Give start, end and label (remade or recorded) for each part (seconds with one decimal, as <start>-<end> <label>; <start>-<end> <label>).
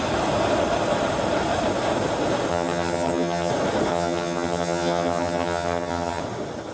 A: 0.0-2.5 recorded; 2.5-3.5 remade; 3.5-3.9 recorded; 3.9-6.2 remade; 6.2-6.7 recorded